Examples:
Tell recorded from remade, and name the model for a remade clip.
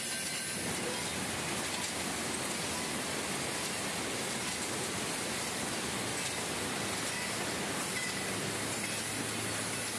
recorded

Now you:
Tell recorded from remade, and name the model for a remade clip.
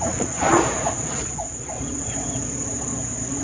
remade, vocoder, Vocos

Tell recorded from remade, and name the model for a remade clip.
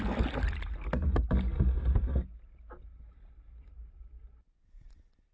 recorded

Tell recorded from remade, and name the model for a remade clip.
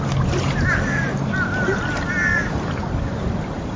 recorded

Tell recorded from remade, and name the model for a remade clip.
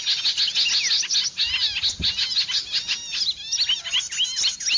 recorded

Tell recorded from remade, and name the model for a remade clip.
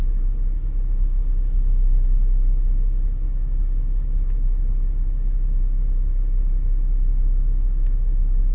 recorded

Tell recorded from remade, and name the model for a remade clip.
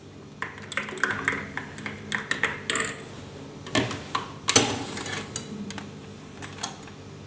recorded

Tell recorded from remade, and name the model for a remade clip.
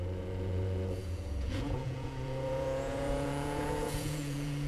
remade, vocoder, Vocos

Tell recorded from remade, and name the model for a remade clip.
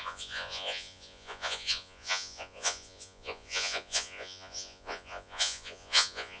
remade, vocoder, Vocos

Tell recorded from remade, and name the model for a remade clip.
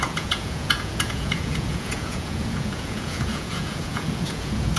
remade, vocoder, Vocos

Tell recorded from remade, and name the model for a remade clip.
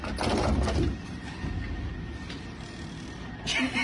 recorded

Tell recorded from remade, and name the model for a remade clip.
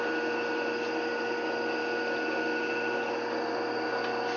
recorded